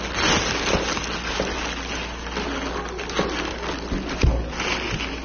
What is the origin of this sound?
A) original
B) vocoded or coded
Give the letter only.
A